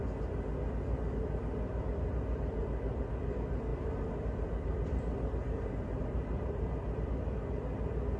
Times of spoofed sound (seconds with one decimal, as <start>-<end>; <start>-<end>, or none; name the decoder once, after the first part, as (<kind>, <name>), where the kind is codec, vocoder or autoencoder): 1.7-3.0 (vocoder, BigVGAN v2); 3.7-7.1